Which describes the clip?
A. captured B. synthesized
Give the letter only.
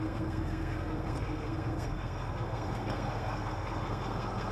B